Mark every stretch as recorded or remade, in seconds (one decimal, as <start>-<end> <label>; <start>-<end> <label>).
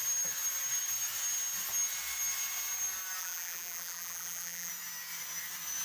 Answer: 0.0-3.2 recorded; 3.2-4.7 remade; 4.7-5.8 recorded